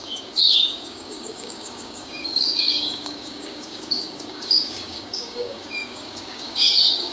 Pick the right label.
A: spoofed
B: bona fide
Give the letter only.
A